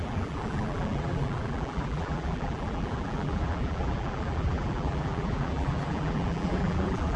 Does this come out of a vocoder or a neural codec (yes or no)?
yes